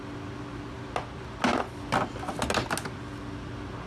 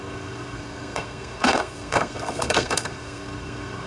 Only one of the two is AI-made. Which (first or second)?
second